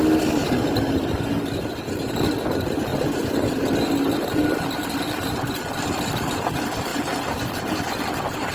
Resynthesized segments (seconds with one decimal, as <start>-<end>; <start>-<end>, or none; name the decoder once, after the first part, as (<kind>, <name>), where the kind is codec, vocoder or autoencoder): none